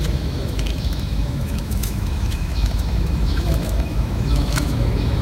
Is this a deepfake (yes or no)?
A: yes